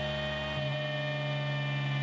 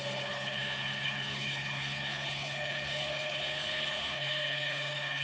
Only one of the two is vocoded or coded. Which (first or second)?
second